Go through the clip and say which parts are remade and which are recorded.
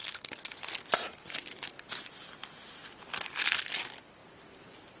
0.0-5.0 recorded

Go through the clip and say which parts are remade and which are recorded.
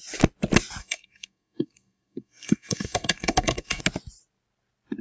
0.0-0.8 recorded; 0.8-3.8 remade; 3.8-5.0 recorded